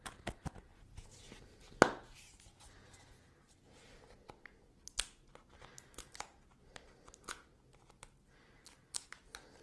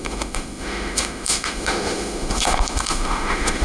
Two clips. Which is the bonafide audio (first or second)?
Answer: first